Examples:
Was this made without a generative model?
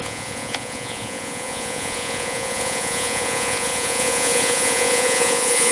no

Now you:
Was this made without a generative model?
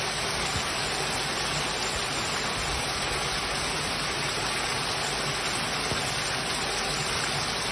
yes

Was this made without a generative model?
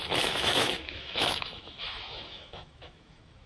no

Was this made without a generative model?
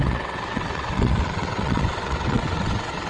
no